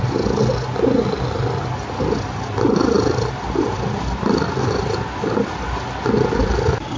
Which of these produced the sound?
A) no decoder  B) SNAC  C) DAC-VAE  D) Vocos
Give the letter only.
A